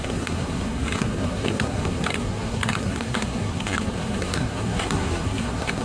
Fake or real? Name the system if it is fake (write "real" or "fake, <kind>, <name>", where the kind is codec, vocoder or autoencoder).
fake, codec, SNAC